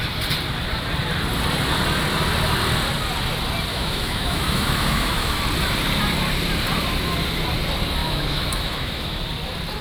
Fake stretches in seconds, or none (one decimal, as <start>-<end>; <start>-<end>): 3.7-5.4; 8.0-9.2